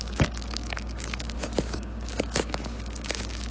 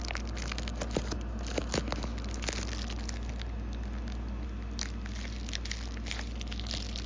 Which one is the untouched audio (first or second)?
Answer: second